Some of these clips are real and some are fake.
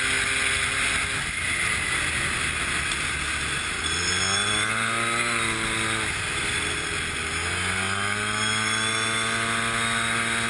real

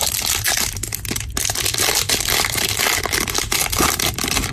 real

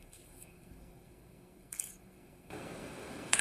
fake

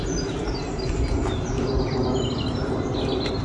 real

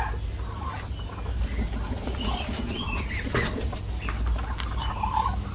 real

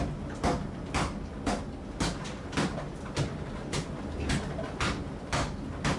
real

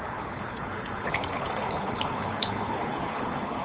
fake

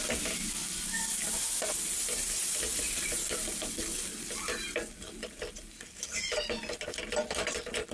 real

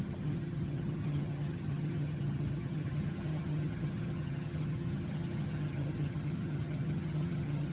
fake